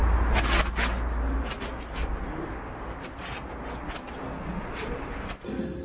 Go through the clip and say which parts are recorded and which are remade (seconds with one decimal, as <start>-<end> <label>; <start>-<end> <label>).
0.0-5.8 recorded